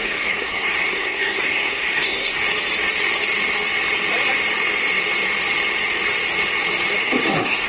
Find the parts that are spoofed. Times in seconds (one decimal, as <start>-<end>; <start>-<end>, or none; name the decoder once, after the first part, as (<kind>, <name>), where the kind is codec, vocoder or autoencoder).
0.0-2.4 (codec, SNAC); 7.0-7.7